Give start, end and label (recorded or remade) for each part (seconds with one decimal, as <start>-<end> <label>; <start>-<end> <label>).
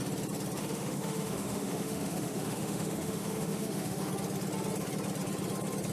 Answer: 0.0-0.6 recorded; 0.6-4.1 remade; 4.1-5.9 recorded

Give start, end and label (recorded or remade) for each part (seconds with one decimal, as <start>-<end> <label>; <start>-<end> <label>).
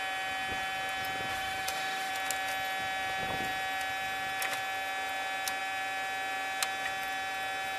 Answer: 0.0-1.3 recorded; 1.3-2.1 remade; 2.1-7.8 recorded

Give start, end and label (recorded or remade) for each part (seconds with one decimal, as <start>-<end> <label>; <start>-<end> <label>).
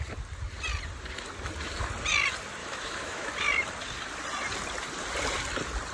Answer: 0.0-2.6 recorded; 2.6-3.3 remade; 3.3-5.9 recorded